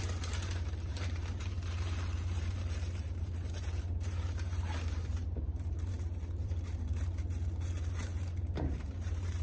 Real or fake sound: fake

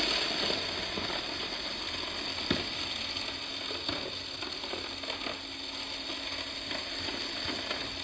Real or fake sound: real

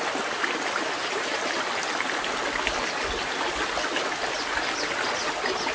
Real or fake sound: real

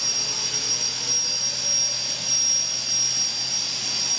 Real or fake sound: real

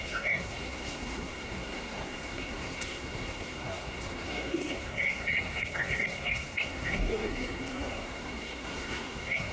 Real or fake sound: fake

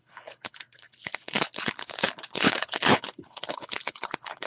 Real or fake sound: fake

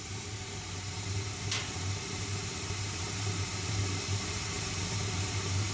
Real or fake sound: fake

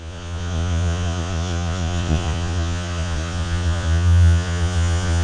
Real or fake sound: fake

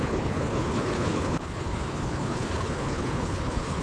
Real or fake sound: fake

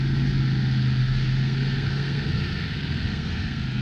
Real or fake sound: fake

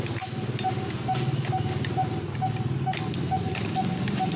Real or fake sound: real